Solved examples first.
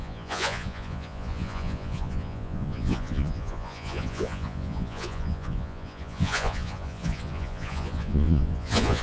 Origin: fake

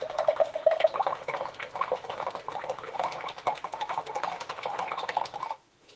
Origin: fake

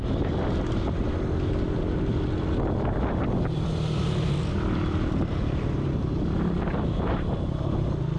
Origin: real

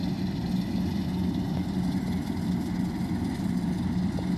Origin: real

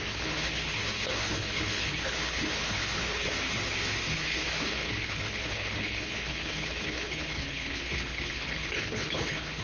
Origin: fake